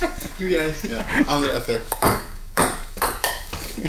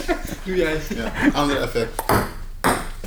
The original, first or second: second